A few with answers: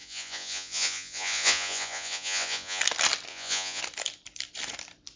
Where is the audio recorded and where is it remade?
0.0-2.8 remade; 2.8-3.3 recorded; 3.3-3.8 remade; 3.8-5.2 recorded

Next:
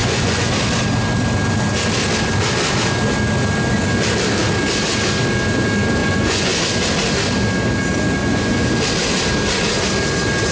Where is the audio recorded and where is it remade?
0.0-0.5 remade; 0.5-6.0 recorded; 6.0-6.6 remade; 6.6-8.2 recorded; 8.2-8.7 remade; 8.7-10.5 recorded

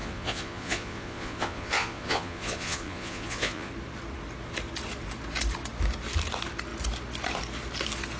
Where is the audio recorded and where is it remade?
0.0-3.7 remade; 3.7-8.2 recorded

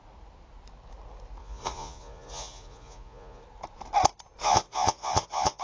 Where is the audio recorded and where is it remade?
0.0-1.4 recorded; 1.4-3.4 remade; 3.4-4.4 recorded; 4.4-5.6 remade